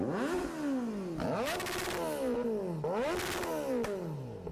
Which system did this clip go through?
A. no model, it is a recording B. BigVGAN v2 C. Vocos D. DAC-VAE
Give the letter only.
A